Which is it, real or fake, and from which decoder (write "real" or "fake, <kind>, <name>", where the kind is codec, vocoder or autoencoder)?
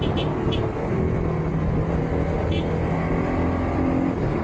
real